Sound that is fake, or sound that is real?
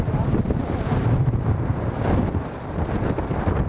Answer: real